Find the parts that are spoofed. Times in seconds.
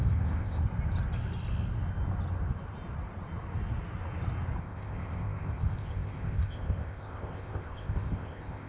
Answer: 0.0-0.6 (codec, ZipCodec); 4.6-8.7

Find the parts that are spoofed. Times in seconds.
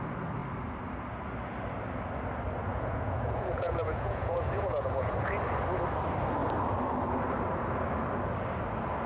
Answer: 2.7-5.3 (vocoder, Vocos)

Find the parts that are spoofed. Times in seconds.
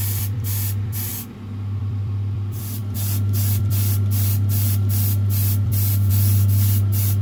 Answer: 0.0-1.1 (vocoder, BigVGAN v2); 1.8-7.2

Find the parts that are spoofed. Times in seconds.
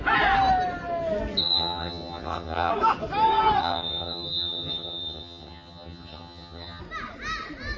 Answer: 1.4-2.7 (vocoder, HiFi-GAN); 3.6-6.8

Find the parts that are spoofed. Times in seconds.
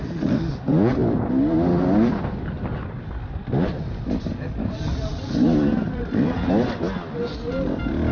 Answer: 4.9-6.5 (vocoder, BigVGAN v2)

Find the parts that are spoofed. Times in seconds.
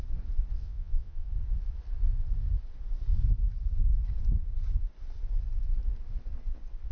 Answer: 0.6-1.3 (vocoder, WaveNeXt)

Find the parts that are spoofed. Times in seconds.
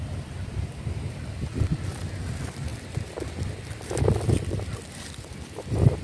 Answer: none